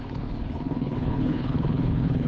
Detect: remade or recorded remade